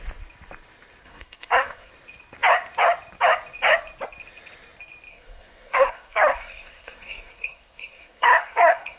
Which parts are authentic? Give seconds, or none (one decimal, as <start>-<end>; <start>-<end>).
0.0-1.0; 1.9-5.1